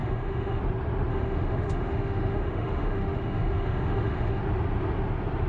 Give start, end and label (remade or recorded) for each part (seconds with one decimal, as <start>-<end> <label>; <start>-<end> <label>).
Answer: 0.0-0.6 remade; 0.6-1.1 recorded; 1.1-4.4 remade; 4.4-5.5 recorded